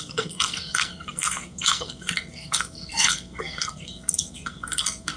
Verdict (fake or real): fake